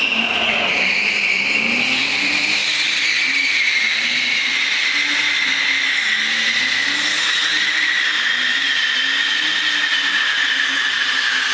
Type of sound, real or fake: real